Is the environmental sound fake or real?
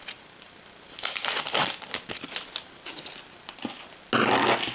real